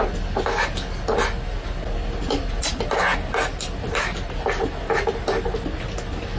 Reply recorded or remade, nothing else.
recorded